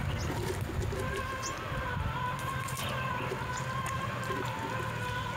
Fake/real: real